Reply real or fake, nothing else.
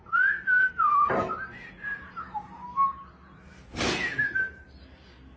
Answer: real